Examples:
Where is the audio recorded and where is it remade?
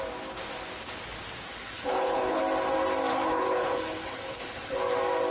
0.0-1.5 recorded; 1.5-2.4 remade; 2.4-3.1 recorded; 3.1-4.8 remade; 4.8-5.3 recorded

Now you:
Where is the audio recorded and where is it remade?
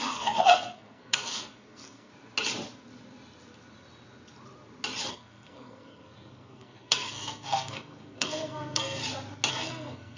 0.0-2.1 remade; 2.1-5.1 recorded; 5.1-9.0 remade; 9.0-9.5 recorded; 9.5-10.2 remade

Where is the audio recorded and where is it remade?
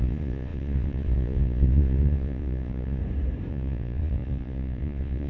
0.0-3.0 remade; 3.0-3.5 recorded; 3.5-5.3 remade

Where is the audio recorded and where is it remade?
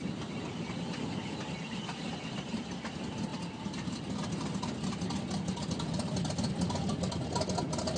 0.0-8.0 recorded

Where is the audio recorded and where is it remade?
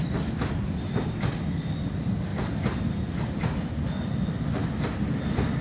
0.0-5.6 recorded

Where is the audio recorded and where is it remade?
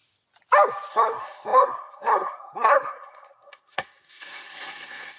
0.0-0.9 recorded; 0.9-5.2 remade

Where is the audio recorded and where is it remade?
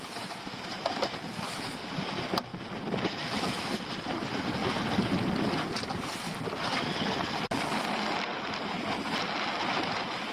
0.0-10.3 recorded